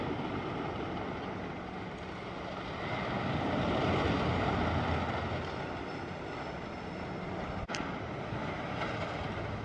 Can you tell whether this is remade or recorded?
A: recorded